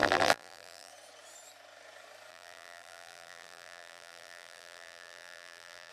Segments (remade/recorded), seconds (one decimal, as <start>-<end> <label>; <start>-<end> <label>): 0.0-0.9 remade; 0.9-2.3 recorded; 2.3-5.9 remade